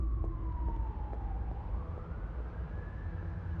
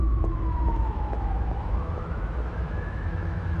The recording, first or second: first